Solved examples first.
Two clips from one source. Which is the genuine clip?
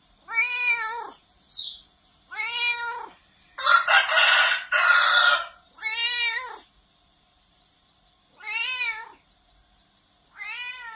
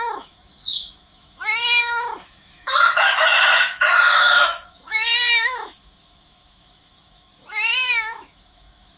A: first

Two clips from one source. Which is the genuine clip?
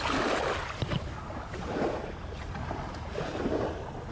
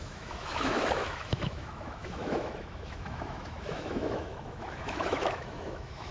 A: first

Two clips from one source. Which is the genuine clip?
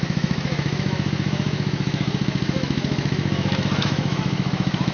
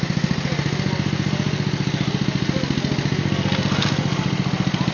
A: second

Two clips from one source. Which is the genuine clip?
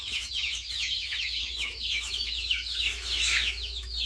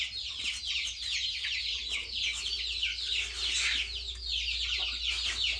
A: second